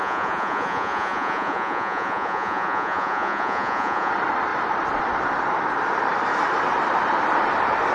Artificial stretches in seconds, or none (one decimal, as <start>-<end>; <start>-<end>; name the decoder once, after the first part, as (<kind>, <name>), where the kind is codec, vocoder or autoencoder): 0.0-4.1 (vocoder, Vocos)